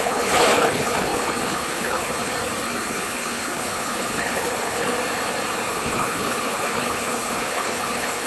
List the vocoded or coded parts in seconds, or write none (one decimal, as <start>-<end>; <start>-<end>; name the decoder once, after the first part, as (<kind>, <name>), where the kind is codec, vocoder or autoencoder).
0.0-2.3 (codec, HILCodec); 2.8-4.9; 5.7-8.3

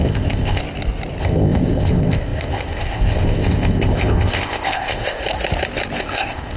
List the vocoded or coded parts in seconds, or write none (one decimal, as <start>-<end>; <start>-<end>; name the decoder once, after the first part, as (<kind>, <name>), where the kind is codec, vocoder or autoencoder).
0.0-0.6 (codec, ZipCodec); 1.2-5.2; 6.0-6.6

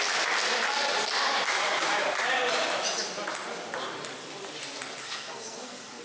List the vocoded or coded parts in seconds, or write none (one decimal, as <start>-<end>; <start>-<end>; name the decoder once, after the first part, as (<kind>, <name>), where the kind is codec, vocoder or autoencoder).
5.0-6.0 (codec, SNAC)

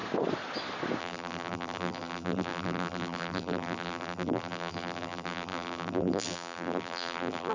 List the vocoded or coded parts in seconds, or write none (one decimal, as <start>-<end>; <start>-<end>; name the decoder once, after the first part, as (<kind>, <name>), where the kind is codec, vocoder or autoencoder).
1.0-7.5 (vocoder, BigVGAN v2)